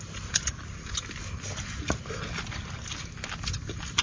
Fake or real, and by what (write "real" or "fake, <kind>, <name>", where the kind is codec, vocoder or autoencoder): real